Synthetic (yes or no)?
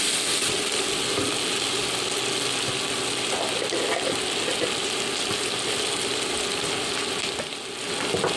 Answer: no